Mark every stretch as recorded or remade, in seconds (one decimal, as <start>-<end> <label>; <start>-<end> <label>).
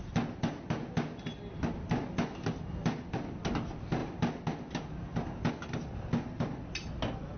0.0-7.4 recorded